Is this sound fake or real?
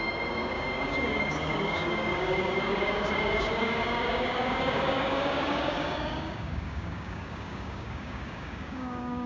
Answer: fake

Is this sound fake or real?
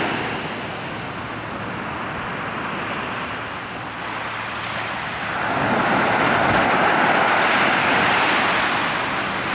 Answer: real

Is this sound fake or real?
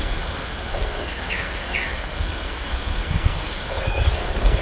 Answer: fake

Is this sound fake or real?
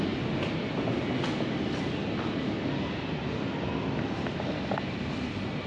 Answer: real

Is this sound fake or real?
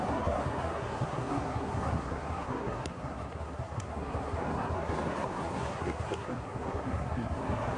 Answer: fake